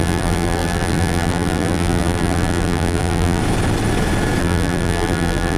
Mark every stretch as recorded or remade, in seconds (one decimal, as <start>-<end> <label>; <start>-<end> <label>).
0.0-3.4 remade; 3.4-4.4 recorded; 4.4-5.6 remade